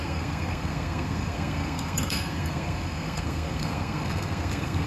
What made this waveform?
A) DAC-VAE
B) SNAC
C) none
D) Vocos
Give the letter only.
B